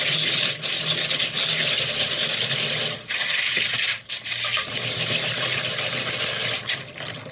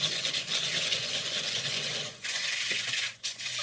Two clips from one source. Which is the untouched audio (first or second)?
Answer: first